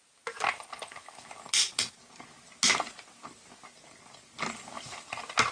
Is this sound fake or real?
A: real